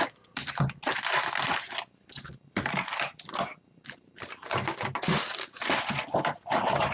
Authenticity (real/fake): real